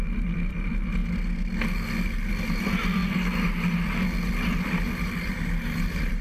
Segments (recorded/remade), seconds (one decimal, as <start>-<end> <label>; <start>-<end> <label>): 0.0-1.0 remade; 1.0-2.3 recorded; 2.3-3.0 remade; 3.0-4.3 recorded; 4.3-6.2 remade